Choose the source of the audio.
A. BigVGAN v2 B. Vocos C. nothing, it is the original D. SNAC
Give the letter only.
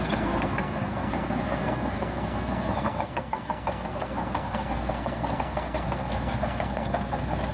D